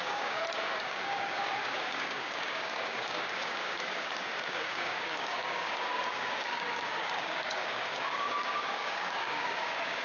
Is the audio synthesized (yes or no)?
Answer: yes